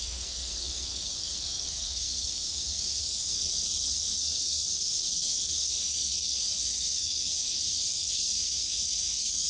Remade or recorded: remade